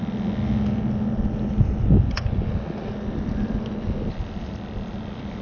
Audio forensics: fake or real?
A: real